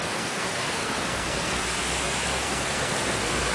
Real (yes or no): no